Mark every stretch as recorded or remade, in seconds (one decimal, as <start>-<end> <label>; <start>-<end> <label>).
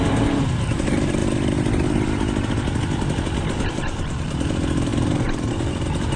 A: 0.0-1.2 remade; 1.2-3.7 recorded; 3.7-6.2 remade